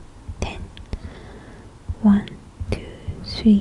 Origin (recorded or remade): recorded